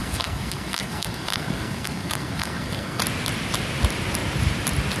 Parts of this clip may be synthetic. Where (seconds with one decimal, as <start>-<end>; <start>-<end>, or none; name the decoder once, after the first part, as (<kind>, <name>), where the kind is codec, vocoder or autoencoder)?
0.0-3.0 (codec, SNAC)